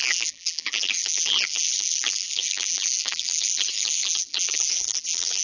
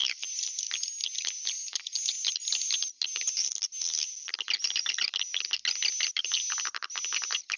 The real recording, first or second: second